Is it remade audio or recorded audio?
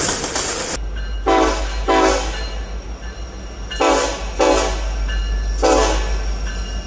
recorded